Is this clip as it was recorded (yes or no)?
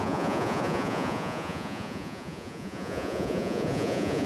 no